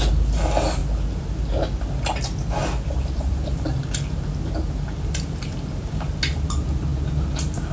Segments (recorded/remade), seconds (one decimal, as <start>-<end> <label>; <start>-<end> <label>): 0.0-7.7 recorded